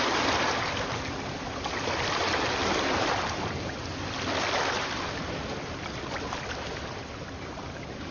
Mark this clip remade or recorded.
recorded